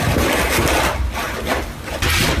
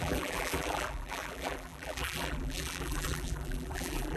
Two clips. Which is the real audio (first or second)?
first